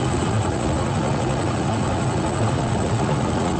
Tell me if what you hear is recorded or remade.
remade